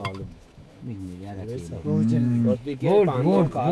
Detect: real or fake fake